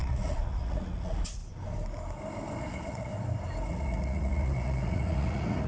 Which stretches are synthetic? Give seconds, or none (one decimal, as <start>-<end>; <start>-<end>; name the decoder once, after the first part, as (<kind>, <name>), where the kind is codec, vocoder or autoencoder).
0.0-1.4 (vocoder, Vocos); 2.6-3.1; 3.7-5.7